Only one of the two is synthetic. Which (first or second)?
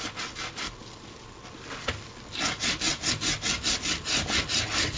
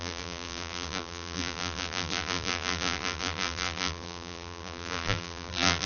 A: second